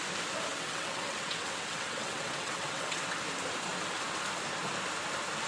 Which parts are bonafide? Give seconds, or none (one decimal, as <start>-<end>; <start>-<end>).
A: 0.0-0.5; 3.2-5.5